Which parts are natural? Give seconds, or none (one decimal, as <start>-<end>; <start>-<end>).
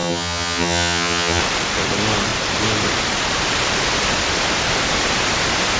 1.4-5.8